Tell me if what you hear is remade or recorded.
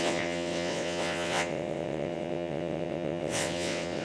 remade